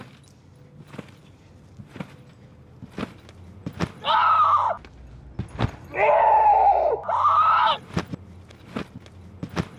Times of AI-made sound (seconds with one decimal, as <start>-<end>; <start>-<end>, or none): none